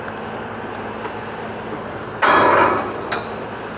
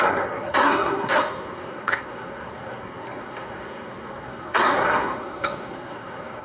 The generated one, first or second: second